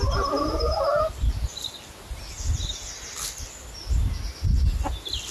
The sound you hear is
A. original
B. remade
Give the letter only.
A